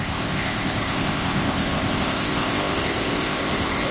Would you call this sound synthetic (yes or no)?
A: yes